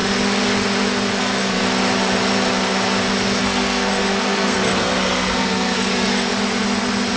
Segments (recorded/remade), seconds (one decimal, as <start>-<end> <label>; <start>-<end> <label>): 0.0-1.2 recorded; 1.2-1.6 remade; 1.6-3.4 recorded; 3.4-6.3 remade; 6.3-7.2 recorded